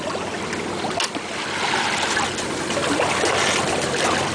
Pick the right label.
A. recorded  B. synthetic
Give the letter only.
A